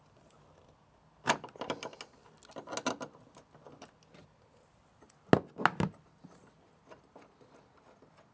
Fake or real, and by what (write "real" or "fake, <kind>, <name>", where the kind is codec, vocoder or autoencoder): real